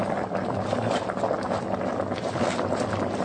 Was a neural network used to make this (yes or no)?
no